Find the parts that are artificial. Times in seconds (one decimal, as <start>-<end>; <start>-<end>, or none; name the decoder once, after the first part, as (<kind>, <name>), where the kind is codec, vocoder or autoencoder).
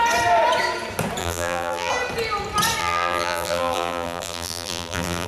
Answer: 1.2-1.9 (vocoder, BigVGAN v2); 2.8-5.3